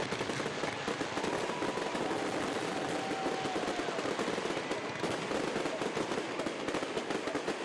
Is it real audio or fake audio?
real